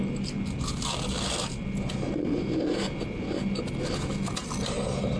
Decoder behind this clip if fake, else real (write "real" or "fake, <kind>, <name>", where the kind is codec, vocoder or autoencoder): real